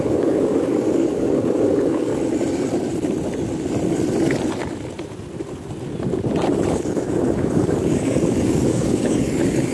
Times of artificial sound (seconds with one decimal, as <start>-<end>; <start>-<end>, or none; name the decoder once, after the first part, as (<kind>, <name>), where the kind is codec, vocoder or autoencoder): 0.0-2.1 (codec, DAC); 6.7-9.7